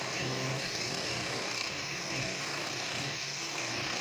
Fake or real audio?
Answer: fake